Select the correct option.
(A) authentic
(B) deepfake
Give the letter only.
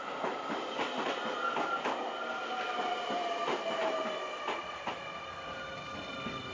A